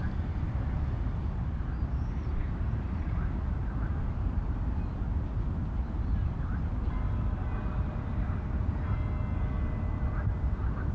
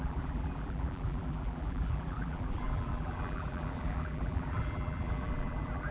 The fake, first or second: second